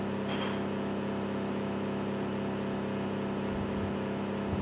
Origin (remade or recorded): recorded